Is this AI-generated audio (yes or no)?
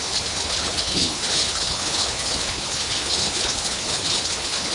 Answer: yes